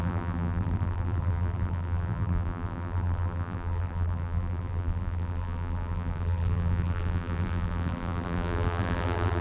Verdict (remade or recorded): remade